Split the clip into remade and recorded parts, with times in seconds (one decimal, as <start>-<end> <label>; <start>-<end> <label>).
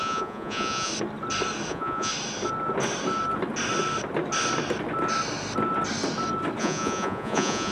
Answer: 0.0-0.9 remade; 0.9-1.7 recorded; 1.7-2.1 remade; 2.1-6.6 recorded; 6.6-7.7 remade